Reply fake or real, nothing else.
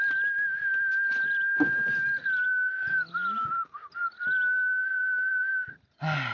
real